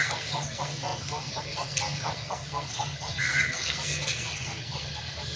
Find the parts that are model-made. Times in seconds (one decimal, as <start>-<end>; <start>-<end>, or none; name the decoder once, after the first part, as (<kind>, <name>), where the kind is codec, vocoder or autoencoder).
0.0-5.4 (codec, SNAC)